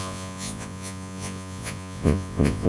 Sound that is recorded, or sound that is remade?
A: remade